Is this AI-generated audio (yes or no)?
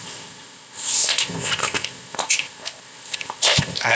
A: yes